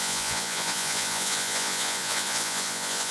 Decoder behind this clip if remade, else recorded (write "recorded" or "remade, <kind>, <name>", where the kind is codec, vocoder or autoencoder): remade, vocoder, Vocos